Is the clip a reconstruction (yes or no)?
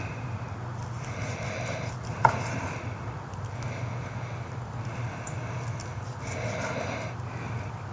no